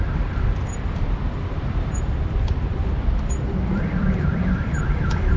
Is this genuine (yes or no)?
no